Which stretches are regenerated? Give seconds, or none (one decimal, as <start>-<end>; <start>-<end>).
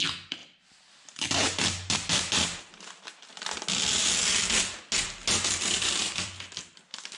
0.4-2.6; 5.2-6.6